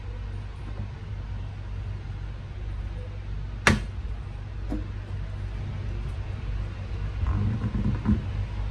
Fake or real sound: real